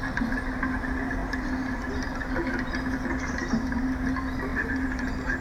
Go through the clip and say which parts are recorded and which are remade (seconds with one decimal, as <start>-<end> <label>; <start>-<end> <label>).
0.0-4.5 recorded; 4.5-5.4 remade